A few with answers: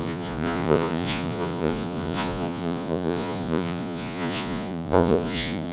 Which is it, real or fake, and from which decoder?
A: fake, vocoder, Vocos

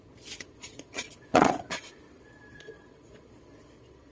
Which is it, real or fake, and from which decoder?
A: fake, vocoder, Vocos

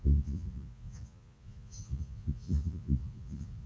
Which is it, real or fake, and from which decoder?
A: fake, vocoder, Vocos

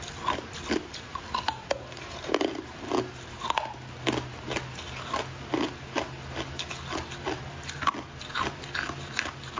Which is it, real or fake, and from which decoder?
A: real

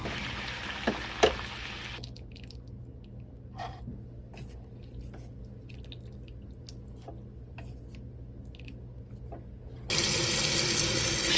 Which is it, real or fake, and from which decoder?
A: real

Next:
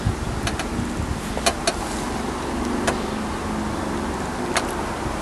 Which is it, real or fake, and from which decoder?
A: real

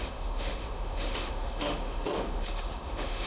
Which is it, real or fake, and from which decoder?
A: fake, autoencoder, DAC-VAE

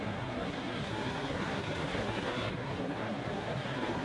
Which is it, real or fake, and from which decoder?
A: fake, codec, SNAC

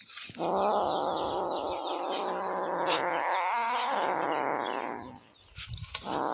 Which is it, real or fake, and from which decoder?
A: real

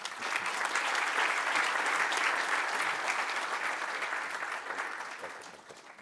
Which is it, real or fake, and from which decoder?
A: real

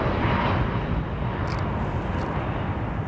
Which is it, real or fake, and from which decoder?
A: real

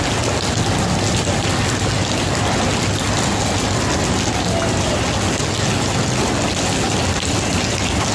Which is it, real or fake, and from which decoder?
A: real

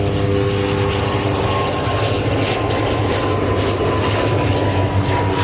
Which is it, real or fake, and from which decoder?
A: real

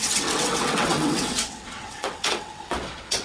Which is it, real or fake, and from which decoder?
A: fake, vocoder, WaveNeXt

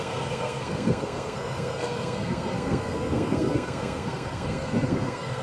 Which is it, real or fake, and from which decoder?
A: fake, codec, SNAC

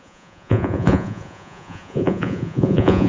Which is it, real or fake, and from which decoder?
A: fake, vocoder, Vocos